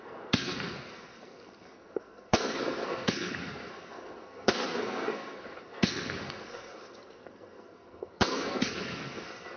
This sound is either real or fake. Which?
fake